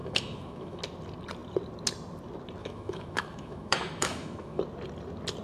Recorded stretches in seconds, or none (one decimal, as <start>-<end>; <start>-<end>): 0.8-2.6; 4.6-5.4